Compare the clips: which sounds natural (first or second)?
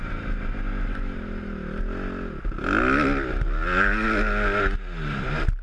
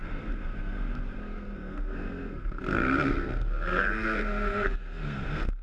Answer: first